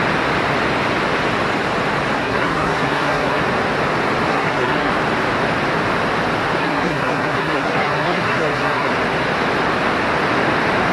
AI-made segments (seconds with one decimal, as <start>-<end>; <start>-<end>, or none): 2.2-3.4; 4.3-4.9; 6.6-8.9